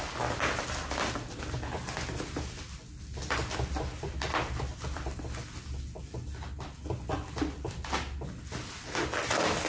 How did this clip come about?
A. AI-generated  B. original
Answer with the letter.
B